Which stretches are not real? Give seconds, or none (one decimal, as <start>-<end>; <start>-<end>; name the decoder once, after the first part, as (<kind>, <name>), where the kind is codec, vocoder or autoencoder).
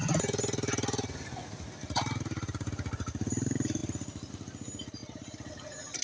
1.4-2.7 (vocoder, BigVGAN v2); 5.0-5.5